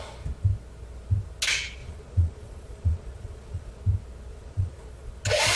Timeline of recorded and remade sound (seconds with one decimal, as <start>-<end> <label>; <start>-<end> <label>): 0.0-1.8 recorded; 1.8-3.8 remade; 3.8-4.3 recorded; 4.3-5.1 remade; 5.1-5.6 recorded